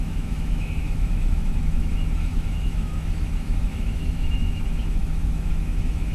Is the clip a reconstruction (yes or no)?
yes